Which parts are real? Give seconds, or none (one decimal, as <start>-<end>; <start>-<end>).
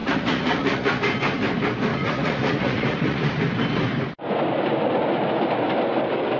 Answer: 1.0-1.9; 3.4-6.4